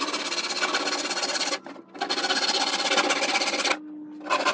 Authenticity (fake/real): real